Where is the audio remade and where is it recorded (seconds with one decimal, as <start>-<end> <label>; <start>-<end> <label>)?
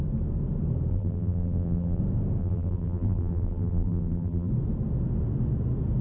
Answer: 0.0-0.9 recorded; 0.9-2.0 remade; 2.0-2.4 recorded; 2.4-4.5 remade; 4.5-6.0 recorded